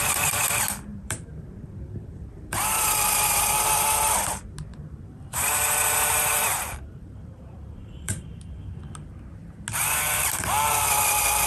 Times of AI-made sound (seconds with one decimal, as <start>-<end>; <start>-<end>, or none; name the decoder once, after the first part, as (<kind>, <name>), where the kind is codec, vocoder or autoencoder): 0.9-3.4 (vocoder, BigVGAN v2); 4.7-8.3